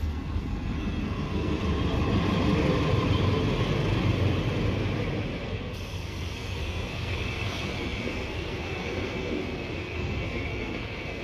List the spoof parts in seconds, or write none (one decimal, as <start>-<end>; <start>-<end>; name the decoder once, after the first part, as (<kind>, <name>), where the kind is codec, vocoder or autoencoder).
0.0-1.6 (codec, SNAC); 5.4-11.2